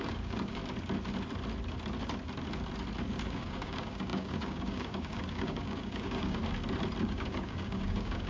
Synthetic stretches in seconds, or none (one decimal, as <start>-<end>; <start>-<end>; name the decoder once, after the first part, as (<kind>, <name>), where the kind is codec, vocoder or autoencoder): 0.0-0.6 (codec, DAC); 3.2-6.4; 7.0-8.3